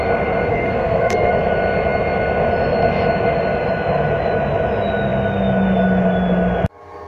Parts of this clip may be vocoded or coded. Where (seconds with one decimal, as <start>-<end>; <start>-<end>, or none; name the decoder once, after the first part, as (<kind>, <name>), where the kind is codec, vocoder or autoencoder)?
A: 0.5-1.3 (codec, SNAC)